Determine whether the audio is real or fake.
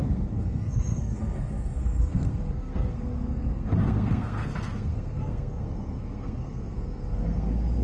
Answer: fake